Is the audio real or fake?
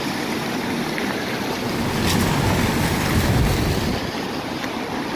real